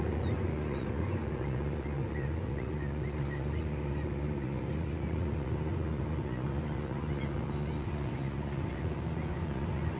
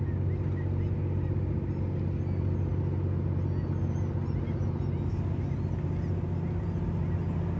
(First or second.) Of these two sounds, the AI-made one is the first